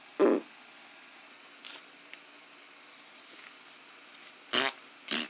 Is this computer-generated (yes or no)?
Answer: no